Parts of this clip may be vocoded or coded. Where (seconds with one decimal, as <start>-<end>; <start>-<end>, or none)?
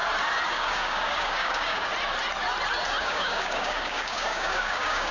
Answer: 0.5-1.9; 3.0-5.1